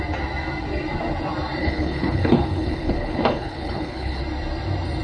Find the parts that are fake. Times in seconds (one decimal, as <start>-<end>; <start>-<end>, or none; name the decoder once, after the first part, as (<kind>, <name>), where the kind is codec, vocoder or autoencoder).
1.6-4.2 (codec, HILCodec)